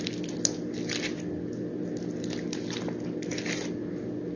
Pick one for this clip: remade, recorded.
recorded